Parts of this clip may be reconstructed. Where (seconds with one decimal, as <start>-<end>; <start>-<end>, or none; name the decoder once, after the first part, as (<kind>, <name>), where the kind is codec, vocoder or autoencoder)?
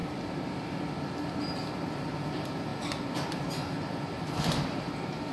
1.3-5.3 (vocoder, BigVGAN v2)